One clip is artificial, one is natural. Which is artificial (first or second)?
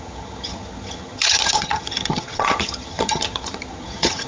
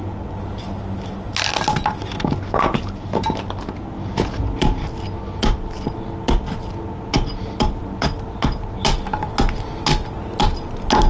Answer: first